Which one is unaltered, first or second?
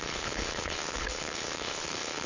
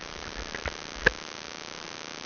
second